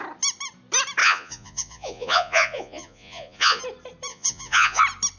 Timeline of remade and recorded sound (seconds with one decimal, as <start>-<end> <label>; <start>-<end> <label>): 0.0-1.0 recorded; 1.0-3.6 remade; 3.6-4.1 recorded; 4.1-4.8 remade; 4.8-5.2 recorded